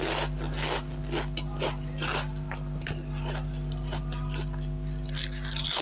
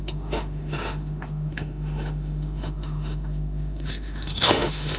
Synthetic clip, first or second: second